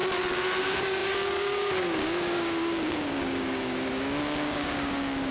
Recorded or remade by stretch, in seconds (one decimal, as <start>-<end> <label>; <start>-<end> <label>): 0.0-0.6 recorded; 0.6-5.3 remade